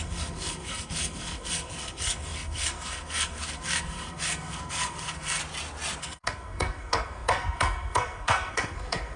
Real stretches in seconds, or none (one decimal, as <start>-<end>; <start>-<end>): 5.4-6.0